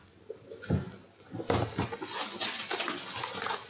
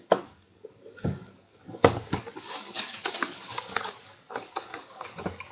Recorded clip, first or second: first